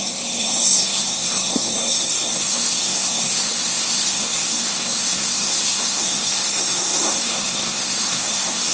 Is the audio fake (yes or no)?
yes